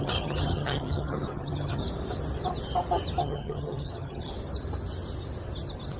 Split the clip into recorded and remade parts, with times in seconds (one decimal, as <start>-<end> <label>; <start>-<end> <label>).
0.0-1.8 remade; 1.8-3.2 recorded; 3.2-4.3 remade; 4.3-6.0 recorded